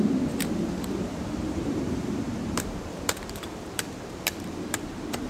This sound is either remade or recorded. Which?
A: remade